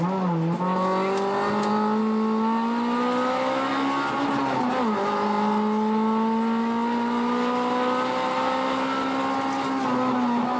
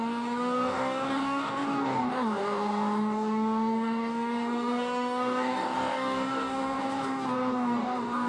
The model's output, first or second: second